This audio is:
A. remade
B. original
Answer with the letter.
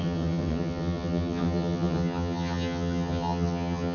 A